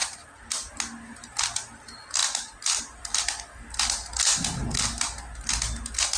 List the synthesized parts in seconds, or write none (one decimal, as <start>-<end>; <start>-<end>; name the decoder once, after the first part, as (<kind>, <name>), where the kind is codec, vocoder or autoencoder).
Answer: none